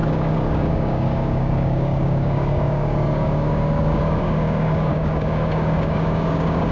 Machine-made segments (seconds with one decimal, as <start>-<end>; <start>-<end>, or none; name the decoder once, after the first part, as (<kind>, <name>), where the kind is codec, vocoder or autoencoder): 0.0-6.7 (codec, DAC)